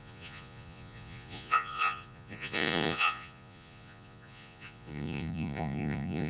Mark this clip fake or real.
fake